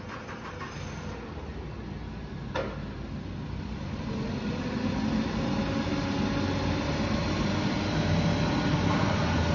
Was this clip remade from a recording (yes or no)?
no